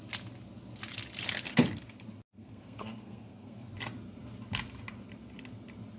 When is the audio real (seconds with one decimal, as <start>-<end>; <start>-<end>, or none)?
0.0-2.4; 3.7-6.0